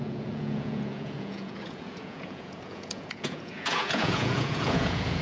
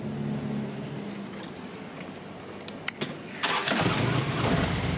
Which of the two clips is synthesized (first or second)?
first